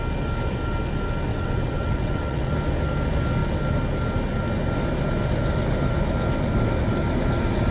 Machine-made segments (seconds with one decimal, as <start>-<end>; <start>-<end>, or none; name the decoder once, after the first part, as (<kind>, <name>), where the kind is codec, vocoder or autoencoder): 1.3-2.5 (vocoder, WaveNeXt)